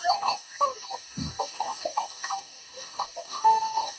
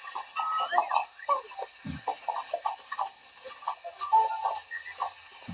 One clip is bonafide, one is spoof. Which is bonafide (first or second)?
second